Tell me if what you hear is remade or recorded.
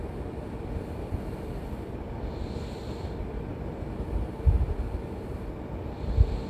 recorded